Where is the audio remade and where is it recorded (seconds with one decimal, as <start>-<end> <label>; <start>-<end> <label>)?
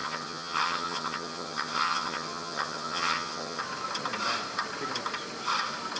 0.0-3.6 remade; 3.6-6.0 recorded